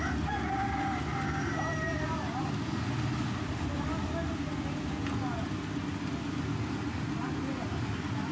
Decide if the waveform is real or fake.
real